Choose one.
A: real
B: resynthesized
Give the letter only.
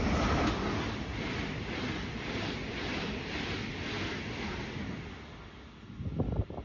A